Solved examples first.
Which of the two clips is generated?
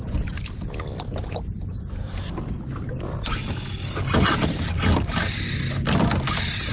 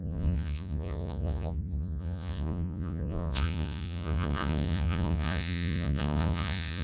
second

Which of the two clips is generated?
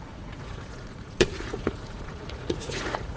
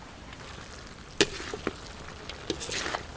first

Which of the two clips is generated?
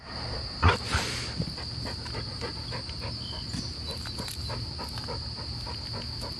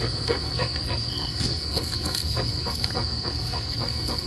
second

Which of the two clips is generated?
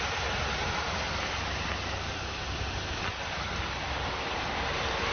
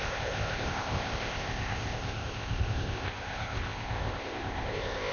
second